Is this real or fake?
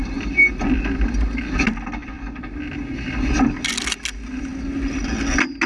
real